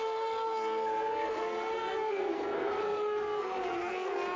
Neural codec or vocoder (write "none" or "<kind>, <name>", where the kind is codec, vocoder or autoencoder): codec, SNAC